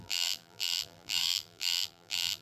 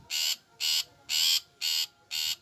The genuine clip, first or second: second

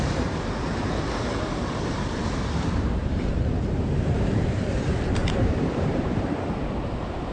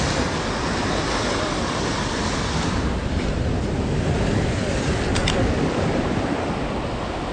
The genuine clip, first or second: second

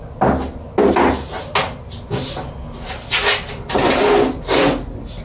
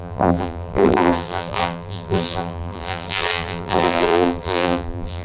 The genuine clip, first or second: first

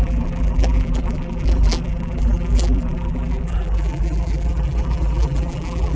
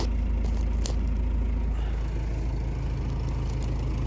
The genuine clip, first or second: second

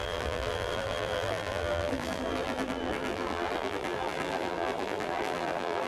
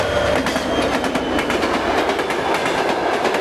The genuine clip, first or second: second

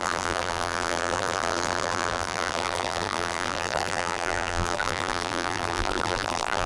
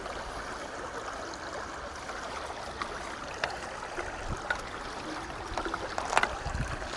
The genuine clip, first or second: second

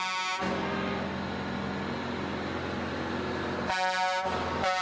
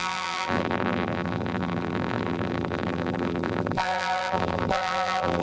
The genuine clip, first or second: first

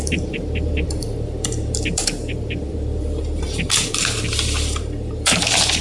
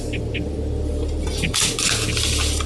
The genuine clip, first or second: second